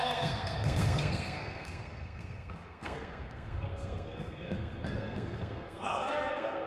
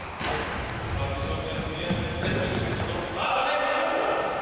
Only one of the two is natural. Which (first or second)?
second